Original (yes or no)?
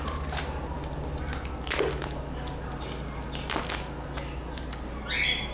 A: yes